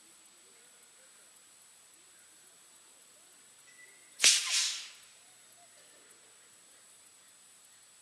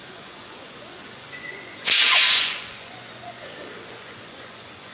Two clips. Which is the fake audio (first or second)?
second